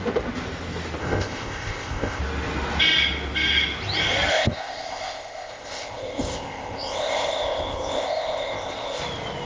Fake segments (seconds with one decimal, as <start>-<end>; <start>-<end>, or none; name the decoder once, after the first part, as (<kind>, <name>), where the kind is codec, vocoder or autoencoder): 1.0-2.2 (codec, ZipCodec); 4.3-9.0